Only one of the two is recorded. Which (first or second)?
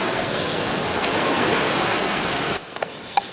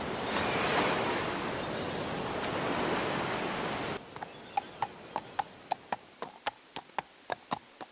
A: second